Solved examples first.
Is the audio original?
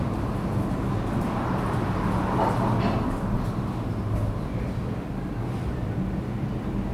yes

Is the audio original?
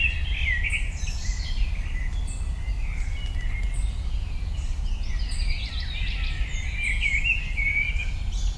yes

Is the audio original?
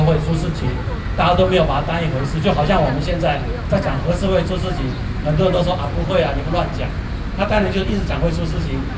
yes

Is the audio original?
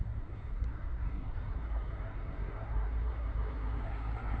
no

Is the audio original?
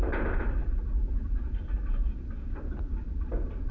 yes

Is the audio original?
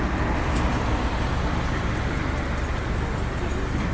yes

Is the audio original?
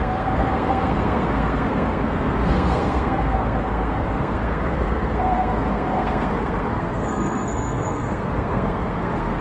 no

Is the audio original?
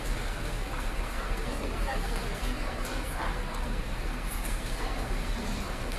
no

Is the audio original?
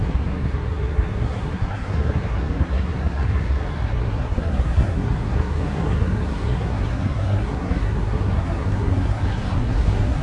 no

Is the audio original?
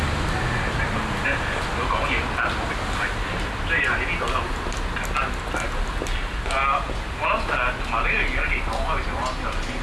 yes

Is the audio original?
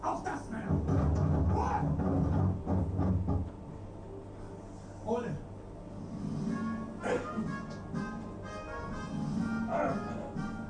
yes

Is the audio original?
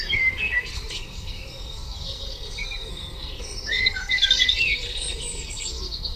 no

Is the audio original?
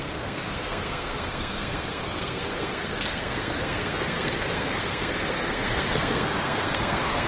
no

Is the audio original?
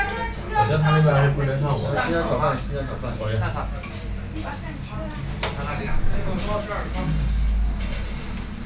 yes